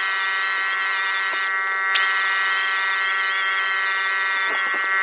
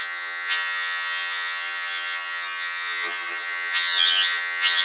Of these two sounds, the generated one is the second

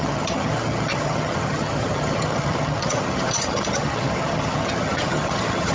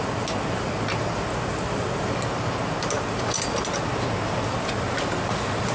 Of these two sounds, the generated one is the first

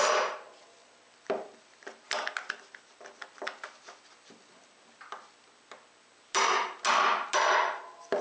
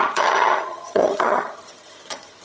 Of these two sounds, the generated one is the second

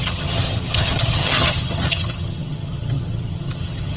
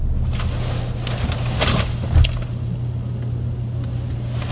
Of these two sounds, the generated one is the first